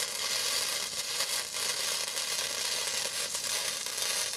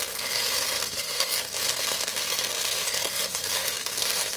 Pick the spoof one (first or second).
second